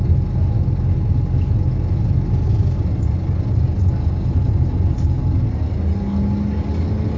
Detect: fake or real real